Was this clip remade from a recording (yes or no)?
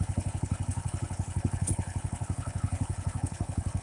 yes